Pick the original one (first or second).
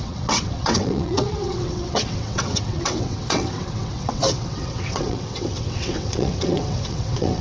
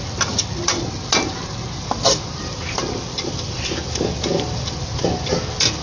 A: second